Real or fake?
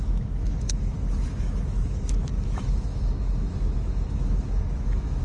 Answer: fake